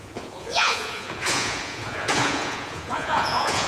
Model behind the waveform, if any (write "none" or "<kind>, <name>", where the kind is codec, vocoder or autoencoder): vocoder, Vocos